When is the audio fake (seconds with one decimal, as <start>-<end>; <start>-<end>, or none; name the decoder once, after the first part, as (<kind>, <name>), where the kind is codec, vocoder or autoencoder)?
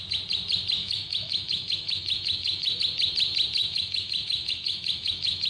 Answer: 0.8-2.8 (autoencoder, DAC-VAE); 3.6-5.5